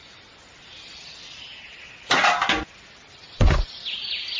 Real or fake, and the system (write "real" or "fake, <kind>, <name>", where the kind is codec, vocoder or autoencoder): real